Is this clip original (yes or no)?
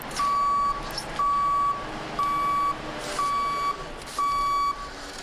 yes